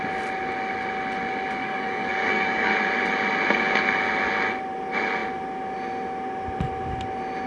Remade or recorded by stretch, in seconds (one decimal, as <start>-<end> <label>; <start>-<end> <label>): 0.0-1.6 recorded; 1.6-2.7 remade; 2.7-7.5 recorded